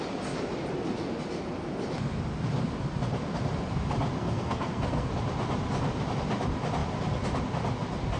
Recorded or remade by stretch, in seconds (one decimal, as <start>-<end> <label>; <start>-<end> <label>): 0.0-4.2 recorded; 4.2-5.1 remade; 5.1-8.2 recorded